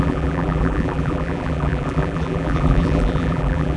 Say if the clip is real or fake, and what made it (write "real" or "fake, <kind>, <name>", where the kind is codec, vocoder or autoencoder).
fake, vocoder, BigVGAN v2